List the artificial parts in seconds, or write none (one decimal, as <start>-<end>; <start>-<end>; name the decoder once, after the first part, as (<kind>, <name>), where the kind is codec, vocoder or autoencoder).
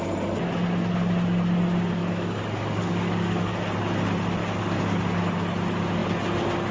2.0-3.5 (codec, DAC); 4.4-5.0